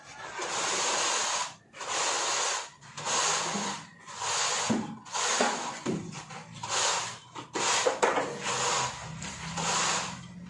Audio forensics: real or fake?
real